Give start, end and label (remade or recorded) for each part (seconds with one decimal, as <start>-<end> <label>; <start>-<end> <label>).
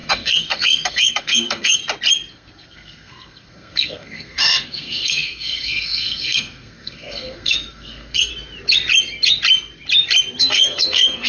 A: 0.0-1.8 remade; 1.8-2.3 recorded; 2.3-8.3 remade; 8.3-10.4 recorded; 10.4-11.3 remade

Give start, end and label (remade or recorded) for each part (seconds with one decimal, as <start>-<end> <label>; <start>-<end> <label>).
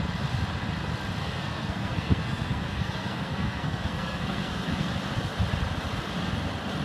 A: 0.0-1.2 recorded; 1.2-4.9 remade; 4.9-6.8 recorded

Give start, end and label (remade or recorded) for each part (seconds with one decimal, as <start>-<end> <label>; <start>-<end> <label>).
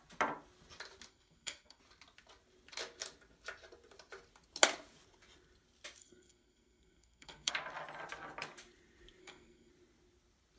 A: 0.0-1.1 recorded; 1.1-1.8 remade; 1.8-6.0 recorded; 6.0-7.5 remade; 7.5-9.2 recorded; 9.2-9.7 remade; 9.7-10.6 recorded